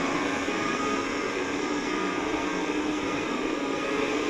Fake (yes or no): yes